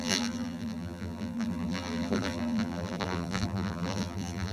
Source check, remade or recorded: remade